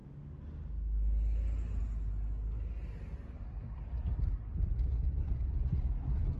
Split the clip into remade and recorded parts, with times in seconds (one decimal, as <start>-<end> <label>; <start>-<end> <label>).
0.0-6.4 recorded